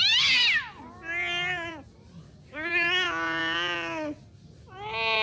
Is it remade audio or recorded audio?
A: recorded